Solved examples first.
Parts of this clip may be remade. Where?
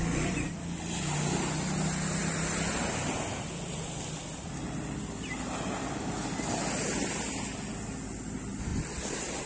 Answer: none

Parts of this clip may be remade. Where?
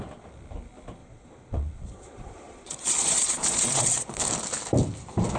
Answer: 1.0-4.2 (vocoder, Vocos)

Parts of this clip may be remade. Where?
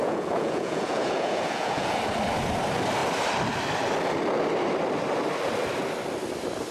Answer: 0.0-2.0 (vocoder, Vocos)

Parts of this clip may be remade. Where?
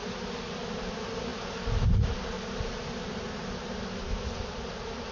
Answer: none